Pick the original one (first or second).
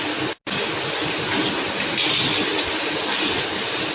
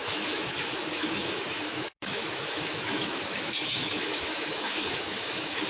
first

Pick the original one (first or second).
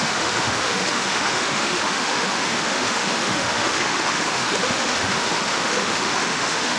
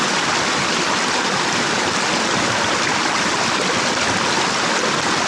second